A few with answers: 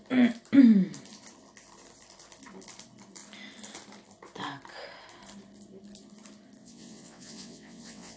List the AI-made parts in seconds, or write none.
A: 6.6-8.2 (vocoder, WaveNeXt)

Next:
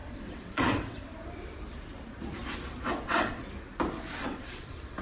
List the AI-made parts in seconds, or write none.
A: 0.0-1.1 (vocoder, WaveNeXt); 2.9-3.4; 4.2-5.0

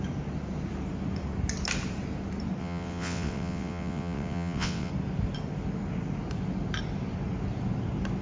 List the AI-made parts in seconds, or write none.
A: 2.6-4.9 (vocoder, WaveNeXt)